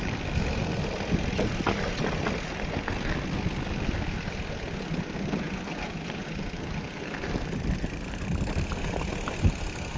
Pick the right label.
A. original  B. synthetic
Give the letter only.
A